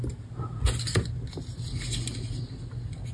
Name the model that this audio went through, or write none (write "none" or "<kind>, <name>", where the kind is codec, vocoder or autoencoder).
none